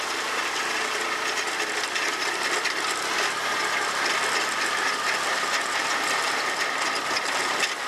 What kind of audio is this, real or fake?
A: real